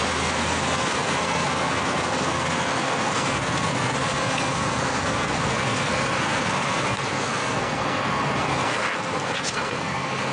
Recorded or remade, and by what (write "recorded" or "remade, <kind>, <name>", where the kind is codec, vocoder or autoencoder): remade, codec, SNAC